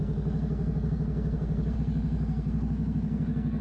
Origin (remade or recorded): remade